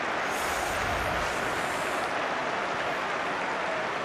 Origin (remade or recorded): recorded